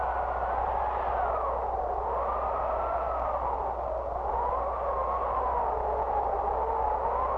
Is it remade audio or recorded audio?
recorded